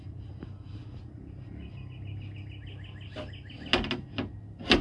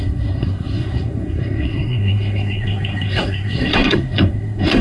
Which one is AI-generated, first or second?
second